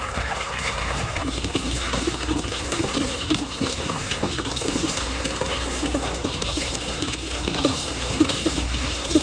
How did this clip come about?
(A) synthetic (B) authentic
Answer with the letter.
A